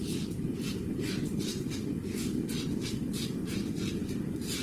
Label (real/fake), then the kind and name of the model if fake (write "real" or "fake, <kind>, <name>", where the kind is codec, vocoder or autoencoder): real